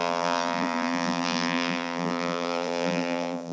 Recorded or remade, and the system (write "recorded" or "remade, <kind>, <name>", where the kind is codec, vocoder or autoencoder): remade, vocoder, BigVGAN v2